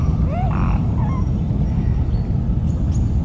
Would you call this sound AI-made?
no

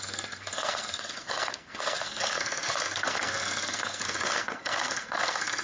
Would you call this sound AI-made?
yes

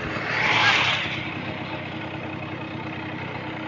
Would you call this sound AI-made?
no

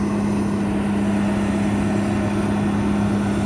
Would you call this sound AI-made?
no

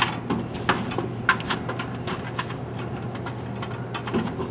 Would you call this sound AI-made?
no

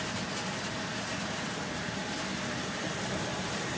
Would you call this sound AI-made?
no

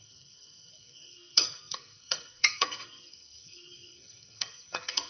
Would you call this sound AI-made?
yes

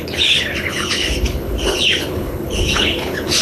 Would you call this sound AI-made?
yes